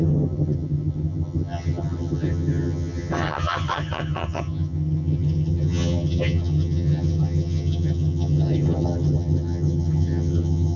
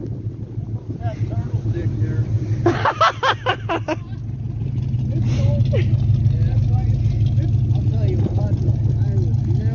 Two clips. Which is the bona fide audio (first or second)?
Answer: second